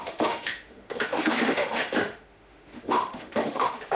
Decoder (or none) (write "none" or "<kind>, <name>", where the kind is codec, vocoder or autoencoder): autoencoder, DAC-VAE